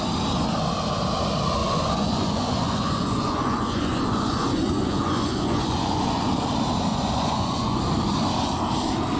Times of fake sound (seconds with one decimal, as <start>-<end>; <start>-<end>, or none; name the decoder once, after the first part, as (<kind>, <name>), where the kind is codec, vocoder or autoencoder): 1.6-6.3 (vocoder, Vocos); 6.9-7.8